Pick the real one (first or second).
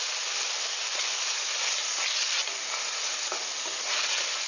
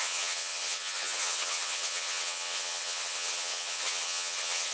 first